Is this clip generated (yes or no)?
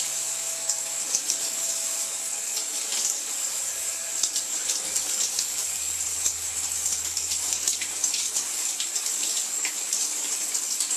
yes